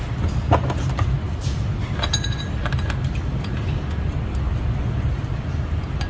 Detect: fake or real real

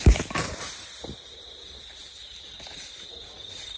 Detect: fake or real real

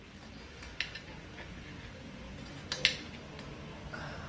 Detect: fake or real real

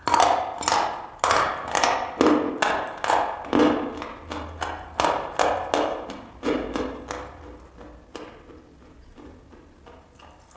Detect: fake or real real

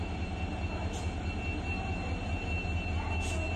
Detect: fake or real real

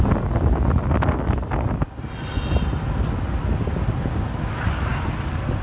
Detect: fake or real real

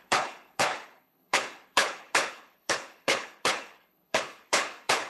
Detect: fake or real fake